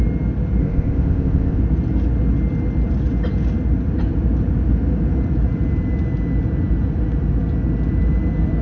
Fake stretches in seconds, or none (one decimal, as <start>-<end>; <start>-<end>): 0.6-1.6